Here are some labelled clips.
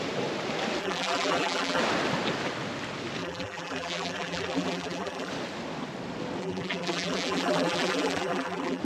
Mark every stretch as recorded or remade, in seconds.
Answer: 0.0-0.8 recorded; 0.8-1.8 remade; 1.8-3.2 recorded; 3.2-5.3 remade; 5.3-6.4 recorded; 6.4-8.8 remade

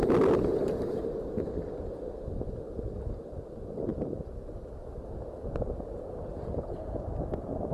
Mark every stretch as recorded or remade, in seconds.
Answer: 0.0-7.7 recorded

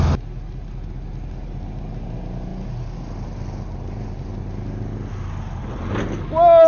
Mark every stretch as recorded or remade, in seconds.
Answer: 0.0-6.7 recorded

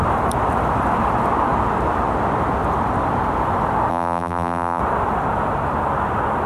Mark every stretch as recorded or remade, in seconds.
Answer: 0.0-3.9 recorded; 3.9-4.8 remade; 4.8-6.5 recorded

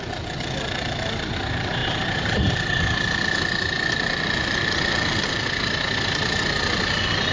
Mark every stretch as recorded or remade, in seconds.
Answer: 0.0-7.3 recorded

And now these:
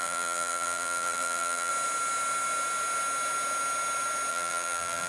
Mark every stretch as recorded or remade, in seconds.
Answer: 0.0-1.7 remade; 1.7-4.3 recorded; 4.3-5.1 remade

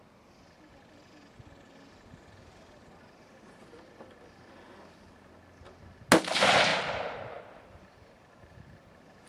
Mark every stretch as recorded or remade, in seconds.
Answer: 0.0-6.7 recorded; 6.7-8.9 remade; 8.9-9.3 recorded

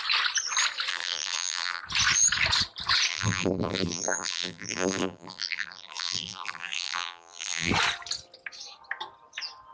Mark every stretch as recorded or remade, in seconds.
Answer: 0.0-0.9 recorded; 0.9-1.8 remade; 1.8-3.1 recorded; 3.1-7.7 remade; 7.7-9.7 recorded